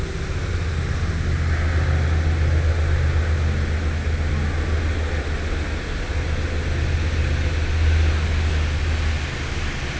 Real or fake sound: real